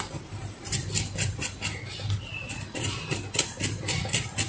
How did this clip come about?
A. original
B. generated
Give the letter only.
A